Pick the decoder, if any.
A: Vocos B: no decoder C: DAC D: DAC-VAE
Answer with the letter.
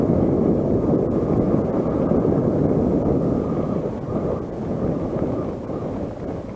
B